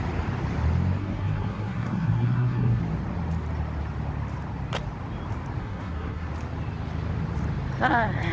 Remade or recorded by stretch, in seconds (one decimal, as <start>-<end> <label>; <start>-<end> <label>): 0.0-1.0 recorded; 1.0-2.8 remade; 2.8-5.6 recorded; 5.6-6.3 remade; 6.3-8.3 recorded